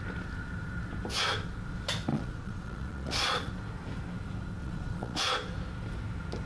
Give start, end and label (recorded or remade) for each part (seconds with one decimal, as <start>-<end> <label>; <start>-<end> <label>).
0.0-2.1 recorded; 2.1-3.5 remade; 3.5-4.6 recorded; 4.6-5.3 remade; 5.3-6.5 recorded